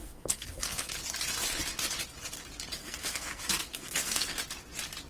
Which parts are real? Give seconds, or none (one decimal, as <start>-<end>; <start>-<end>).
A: 0.9-2.8; 4.4-5.1